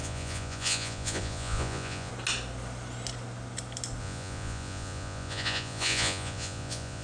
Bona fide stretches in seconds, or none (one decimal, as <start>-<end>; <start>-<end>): 2.1-4.0